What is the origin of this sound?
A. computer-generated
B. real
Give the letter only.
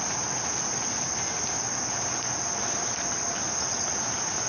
B